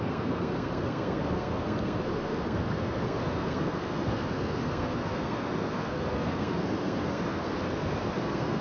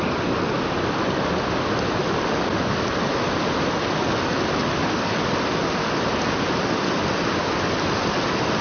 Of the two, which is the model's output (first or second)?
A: first